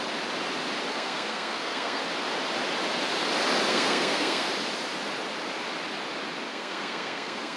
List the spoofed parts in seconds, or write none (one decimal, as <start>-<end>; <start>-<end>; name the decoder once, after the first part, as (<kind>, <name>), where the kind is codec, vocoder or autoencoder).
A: 0.9-2.0 (codec, SNAC); 3.7-4.5; 6.5-7.6

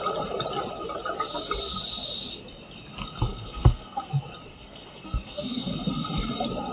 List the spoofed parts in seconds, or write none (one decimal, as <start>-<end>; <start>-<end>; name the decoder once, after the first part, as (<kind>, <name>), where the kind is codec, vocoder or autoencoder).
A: 3.3-4.1 (codec, SNAC); 4.5-5.7

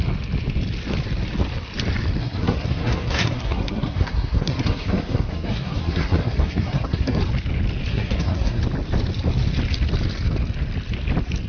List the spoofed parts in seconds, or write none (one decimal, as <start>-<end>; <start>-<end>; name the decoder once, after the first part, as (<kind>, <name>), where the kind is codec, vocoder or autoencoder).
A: 2.2-7.2 (codec, SNAC); 7.9-8.6